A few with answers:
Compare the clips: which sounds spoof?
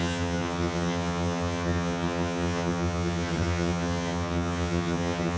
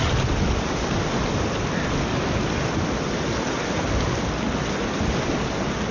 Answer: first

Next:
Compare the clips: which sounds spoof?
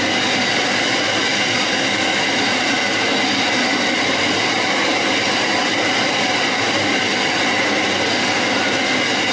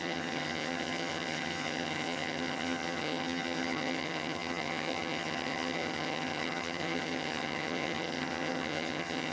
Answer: second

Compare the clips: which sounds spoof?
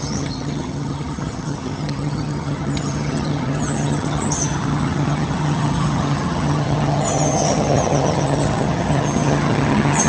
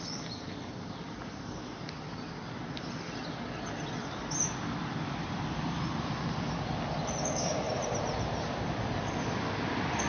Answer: first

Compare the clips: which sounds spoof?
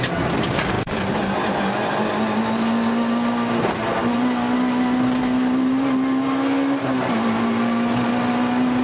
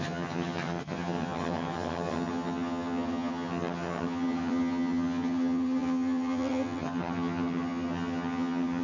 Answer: second